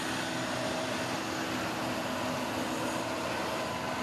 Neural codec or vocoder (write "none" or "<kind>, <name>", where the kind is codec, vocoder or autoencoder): none